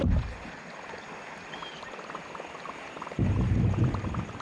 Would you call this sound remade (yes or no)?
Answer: no